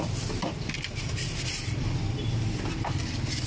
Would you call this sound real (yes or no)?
yes